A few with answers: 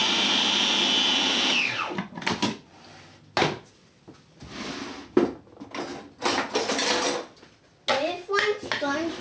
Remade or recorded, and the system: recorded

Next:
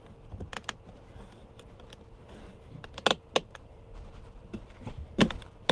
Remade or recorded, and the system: recorded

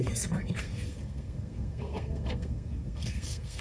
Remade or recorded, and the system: remade, codec, SNAC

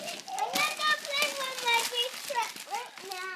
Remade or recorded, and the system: recorded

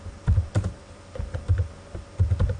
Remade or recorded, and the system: recorded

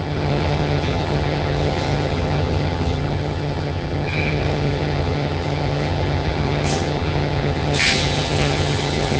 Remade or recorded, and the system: remade, vocoder, HiFi-GAN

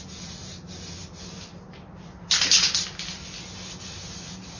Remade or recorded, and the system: recorded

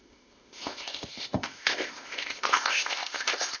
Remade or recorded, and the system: remade, codec, ZipCodec